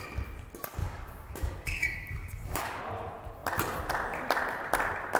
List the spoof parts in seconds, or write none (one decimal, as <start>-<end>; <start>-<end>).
0.8-2.8